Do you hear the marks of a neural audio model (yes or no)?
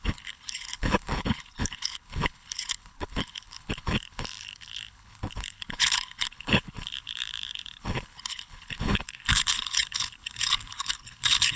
yes